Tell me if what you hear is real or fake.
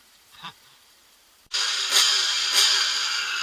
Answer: fake